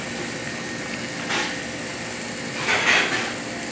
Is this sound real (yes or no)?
yes